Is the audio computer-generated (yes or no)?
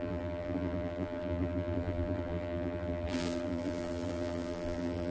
yes